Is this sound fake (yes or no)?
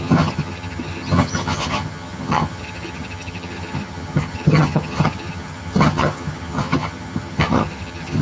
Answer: yes